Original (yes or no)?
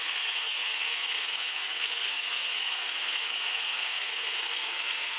no